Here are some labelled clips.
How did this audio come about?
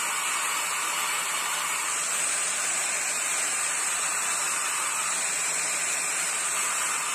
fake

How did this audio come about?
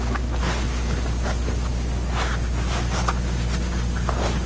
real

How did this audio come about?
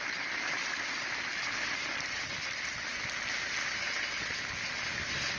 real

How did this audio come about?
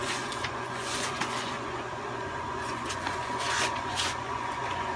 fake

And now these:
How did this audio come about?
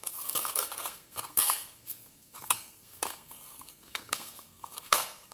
fake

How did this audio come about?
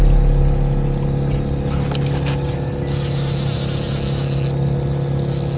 real